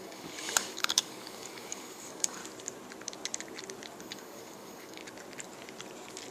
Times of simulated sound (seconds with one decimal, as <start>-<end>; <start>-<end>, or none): 0.0-2.4; 4.0-5.0